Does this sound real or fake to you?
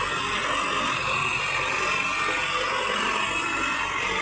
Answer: real